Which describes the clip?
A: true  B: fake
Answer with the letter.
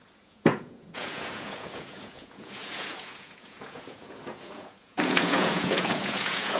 B